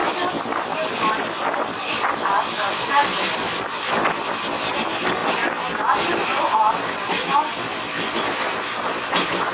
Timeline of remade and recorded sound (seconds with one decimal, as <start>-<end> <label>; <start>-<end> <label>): 0.0-4.2 remade; 4.2-9.5 recorded